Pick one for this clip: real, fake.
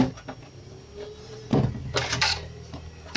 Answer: real